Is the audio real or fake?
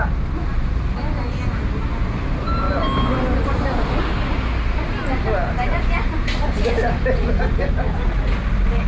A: real